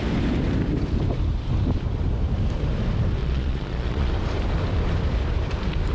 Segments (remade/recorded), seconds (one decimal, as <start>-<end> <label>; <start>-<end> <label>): 0.0-3.2 recorded; 3.2-4.1 remade; 4.1-5.9 recorded